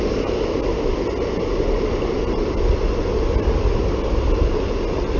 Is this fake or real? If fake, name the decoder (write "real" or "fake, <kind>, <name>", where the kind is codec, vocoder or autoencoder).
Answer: real